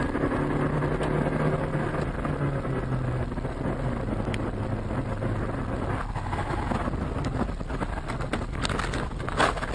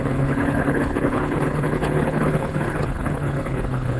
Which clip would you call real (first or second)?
first